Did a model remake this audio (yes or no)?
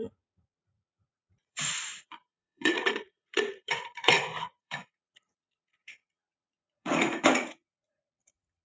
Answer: yes